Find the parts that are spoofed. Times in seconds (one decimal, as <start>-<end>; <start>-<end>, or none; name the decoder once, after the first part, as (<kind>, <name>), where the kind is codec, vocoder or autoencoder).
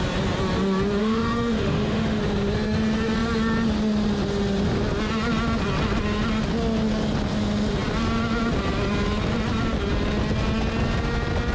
1.0-2.2 (autoencoder, DAC-VAE)